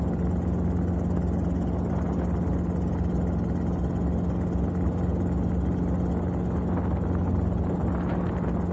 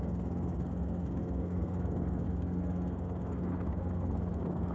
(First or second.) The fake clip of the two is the second